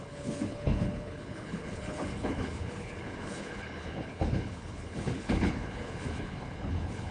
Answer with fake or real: fake